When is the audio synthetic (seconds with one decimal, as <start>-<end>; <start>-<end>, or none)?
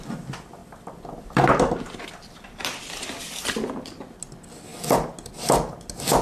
0.6-3.7